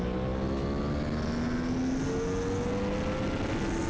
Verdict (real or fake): real